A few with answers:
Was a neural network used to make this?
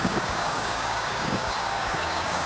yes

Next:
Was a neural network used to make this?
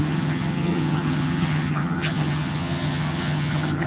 yes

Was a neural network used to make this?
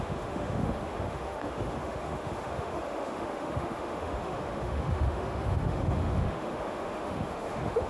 yes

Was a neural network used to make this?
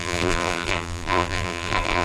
yes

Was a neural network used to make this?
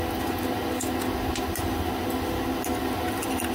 no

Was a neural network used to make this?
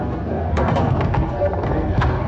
yes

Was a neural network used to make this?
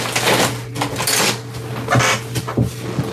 no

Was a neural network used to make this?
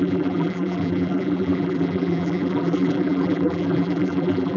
yes